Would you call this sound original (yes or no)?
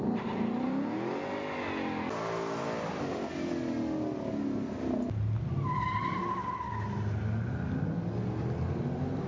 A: yes